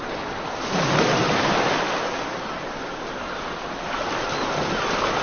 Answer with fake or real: real